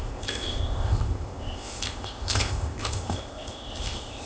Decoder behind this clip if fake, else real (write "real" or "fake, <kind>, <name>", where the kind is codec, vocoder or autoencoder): fake, codec, ZipCodec